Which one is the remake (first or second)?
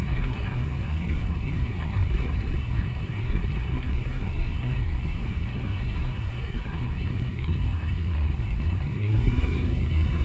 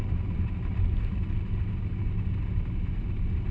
first